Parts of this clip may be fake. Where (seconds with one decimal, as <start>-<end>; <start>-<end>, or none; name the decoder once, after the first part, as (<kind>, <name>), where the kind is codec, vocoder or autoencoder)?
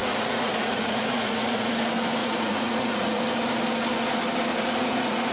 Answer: 0.0-1.7 (vocoder, Vocos); 2.2-3.2; 4.5-5.3